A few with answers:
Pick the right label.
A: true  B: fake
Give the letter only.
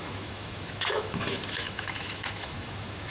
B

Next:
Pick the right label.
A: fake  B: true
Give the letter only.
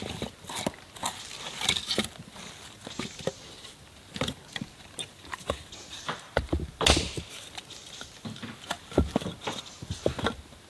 B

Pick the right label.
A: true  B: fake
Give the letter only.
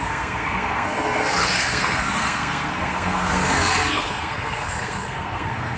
B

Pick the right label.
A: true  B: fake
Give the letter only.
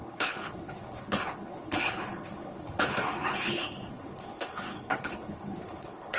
B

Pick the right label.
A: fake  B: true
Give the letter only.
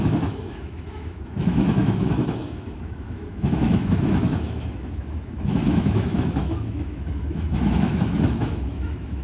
A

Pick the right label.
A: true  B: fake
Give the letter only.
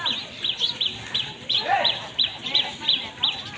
A